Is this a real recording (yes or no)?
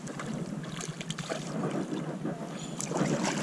yes